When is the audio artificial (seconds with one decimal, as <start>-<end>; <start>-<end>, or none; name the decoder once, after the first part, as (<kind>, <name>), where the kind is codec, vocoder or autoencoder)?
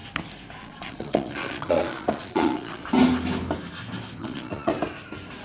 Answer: 0.6-2.8 (vocoder, Vocos); 4.2-4.7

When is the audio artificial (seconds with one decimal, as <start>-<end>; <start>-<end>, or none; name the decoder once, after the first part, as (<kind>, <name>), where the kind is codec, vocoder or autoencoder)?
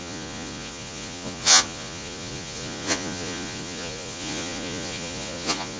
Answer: 0.0-5.8 (vocoder, Vocos)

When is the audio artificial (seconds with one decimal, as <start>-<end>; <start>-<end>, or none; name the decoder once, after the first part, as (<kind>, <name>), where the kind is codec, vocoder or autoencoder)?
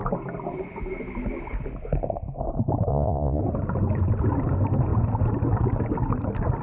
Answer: 2.9-3.4 (vocoder, Vocos)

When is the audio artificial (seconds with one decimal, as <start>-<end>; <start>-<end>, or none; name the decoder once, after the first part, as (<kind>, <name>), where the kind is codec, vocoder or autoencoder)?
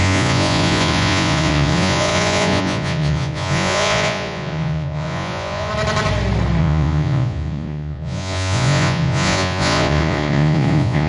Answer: 0.0-5.7 (vocoder, Vocos); 6.6-11.1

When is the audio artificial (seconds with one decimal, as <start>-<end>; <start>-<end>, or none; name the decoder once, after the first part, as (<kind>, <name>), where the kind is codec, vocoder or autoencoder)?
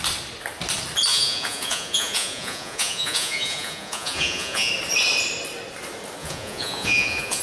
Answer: 1.1-4.7 (vocoder, Vocos); 6.2-7.4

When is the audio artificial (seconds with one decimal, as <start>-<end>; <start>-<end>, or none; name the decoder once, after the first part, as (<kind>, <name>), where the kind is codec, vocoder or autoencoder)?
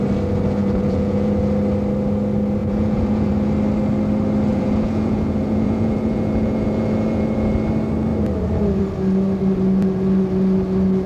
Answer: 0.6-1.4 (vocoder, Vocos); 2.6-3.3; 4.5-7.5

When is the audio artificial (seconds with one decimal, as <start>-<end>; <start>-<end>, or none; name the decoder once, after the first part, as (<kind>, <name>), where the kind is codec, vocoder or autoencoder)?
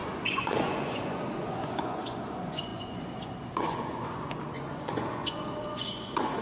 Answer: 0.0-6.4 (vocoder, Vocos)